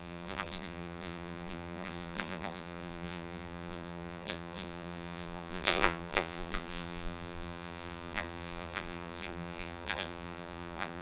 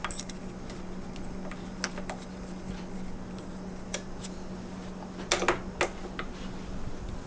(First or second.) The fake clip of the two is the first